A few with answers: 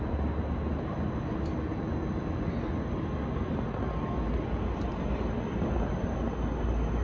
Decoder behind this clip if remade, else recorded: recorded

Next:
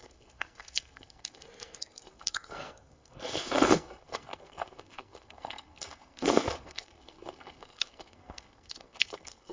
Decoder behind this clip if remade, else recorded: remade, codec, SNAC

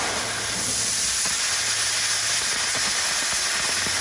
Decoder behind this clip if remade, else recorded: recorded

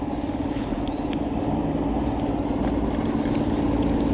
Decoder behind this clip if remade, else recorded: recorded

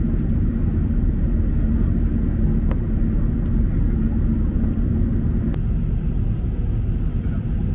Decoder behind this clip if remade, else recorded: recorded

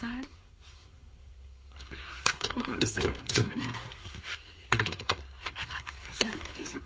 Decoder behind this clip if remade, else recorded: remade, codec, SNAC